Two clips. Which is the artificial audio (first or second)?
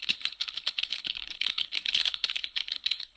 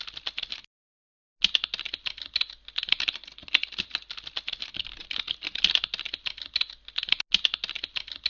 first